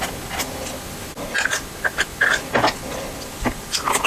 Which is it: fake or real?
real